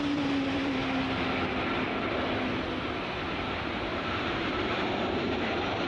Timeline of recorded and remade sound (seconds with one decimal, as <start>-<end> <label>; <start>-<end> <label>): 0.0-0.8 remade; 0.8-3.3 recorded; 3.3-5.9 remade